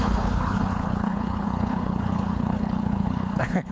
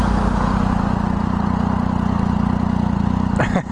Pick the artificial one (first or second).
first